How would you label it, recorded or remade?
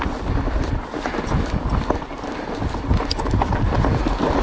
recorded